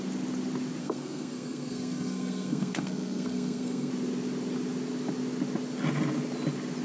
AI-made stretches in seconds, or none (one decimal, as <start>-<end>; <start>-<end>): 0.8-3.9